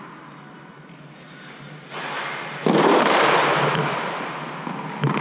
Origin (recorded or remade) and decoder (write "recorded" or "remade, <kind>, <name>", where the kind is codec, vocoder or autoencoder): recorded